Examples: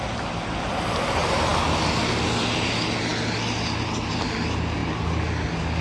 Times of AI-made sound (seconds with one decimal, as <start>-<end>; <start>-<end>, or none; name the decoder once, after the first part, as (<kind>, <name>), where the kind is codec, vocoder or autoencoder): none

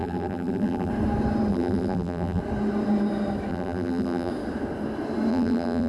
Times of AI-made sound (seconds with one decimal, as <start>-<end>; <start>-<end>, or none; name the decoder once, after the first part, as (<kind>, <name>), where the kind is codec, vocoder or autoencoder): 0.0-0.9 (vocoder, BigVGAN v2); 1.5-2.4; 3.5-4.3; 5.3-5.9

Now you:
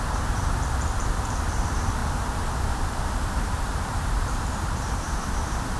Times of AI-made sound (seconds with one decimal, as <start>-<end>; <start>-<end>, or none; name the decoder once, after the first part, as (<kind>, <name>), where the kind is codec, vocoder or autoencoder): 0.0-5.8 (vocoder, BigVGAN v2)

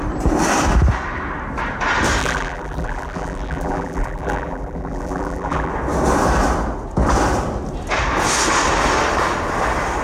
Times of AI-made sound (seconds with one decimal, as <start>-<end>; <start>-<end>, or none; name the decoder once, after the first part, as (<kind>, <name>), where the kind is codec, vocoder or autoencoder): 2.2-5.7 (vocoder, BigVGAN v2)

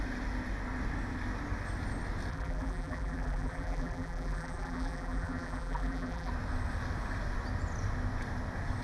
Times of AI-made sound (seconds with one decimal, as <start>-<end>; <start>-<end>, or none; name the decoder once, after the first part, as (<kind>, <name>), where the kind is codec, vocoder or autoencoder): 2.3-6.3 (vocoder, BigVGAN v2)

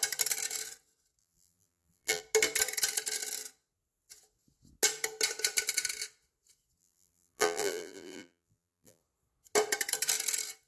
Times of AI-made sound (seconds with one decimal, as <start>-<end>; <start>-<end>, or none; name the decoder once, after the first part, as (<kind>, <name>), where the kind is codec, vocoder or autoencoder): 1.2-2.2 (vocoder, BigVGAN v2); 6.8-9.0

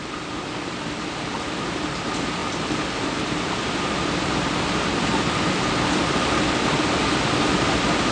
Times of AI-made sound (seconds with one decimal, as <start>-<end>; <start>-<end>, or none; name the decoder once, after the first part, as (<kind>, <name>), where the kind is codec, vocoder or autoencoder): none